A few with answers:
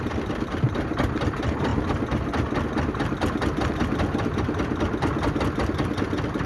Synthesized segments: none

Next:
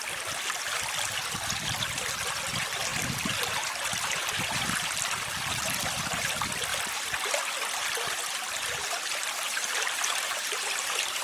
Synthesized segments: none

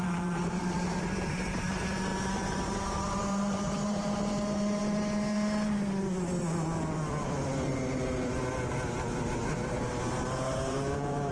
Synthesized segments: 0.0-4.8 (vocoder, BigVGAN v2); 9.5-11.3

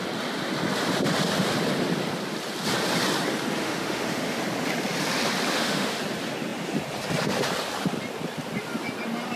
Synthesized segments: 3.6-4.4 (autoencoder, DAC-VAE); 5.5-6.0

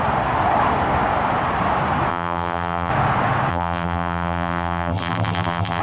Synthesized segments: 2.1-2.9 (vocoder, BigVGAN v2); 3.5-5.8